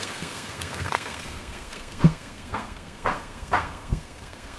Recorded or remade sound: remade